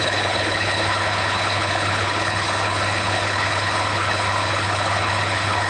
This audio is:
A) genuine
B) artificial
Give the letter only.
B